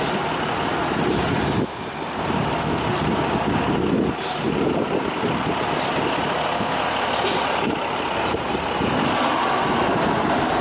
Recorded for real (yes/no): yes